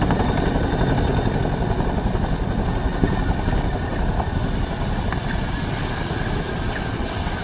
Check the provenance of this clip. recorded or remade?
recorded